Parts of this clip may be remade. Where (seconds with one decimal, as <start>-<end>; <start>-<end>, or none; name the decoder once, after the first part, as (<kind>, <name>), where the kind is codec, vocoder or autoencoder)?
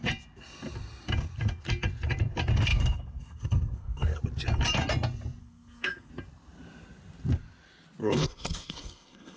2.7-4.2 (codec, SNAC); 5.4-6.1; 8.0-9.4